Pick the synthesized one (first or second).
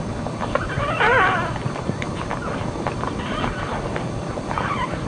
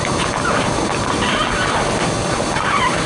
first